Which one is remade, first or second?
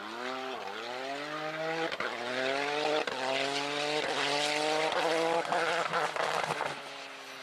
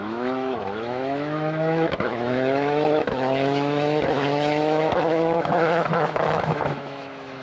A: second